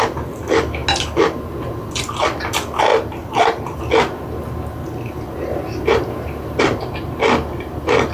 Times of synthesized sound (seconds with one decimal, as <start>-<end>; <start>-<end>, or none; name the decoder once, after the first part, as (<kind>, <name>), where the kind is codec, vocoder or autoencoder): 2.9-3.8 (vocoder, BigVGAN v2); 5.5-6.6